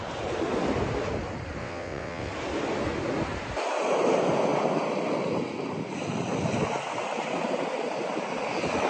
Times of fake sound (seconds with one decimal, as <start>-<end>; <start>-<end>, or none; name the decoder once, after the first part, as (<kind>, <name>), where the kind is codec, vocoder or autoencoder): 1.6-2.3 (vocoder, WaveNeXt)